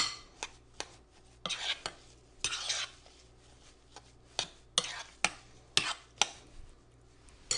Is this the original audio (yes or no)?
yes